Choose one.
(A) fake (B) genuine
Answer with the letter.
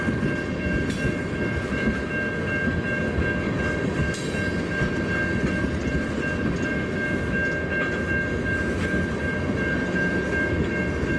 B